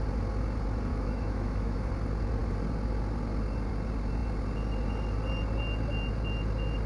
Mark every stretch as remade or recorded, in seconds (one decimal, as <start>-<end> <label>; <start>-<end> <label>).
0.0-0.9 recorded; 0.9-1.9 remade; 1.9-6.9 recorded